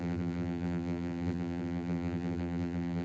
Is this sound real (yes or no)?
no